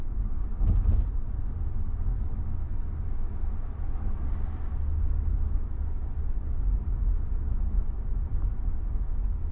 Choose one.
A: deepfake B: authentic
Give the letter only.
B